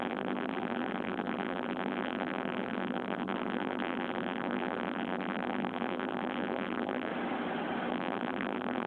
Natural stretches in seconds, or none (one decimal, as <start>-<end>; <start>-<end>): 7.1-7.9